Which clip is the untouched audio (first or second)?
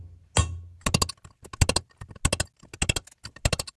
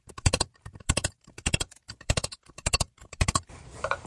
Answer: first